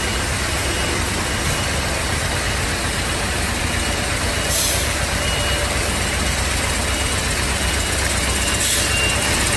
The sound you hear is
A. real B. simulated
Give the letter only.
A